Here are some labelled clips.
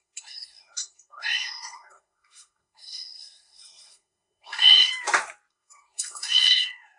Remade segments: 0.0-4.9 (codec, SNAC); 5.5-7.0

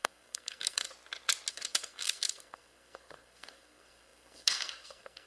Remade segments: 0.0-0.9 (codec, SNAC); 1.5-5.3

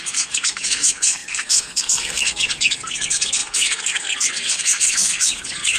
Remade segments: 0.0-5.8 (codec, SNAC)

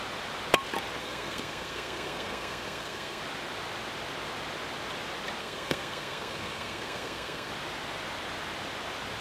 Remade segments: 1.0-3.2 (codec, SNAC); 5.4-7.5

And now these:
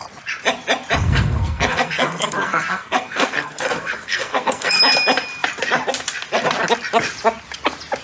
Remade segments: 1.0-4.8 (codec, SNAC)